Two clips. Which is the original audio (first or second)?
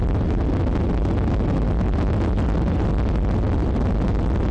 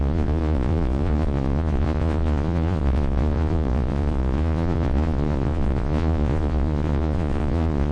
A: first